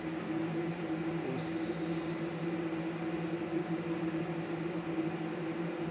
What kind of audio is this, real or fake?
real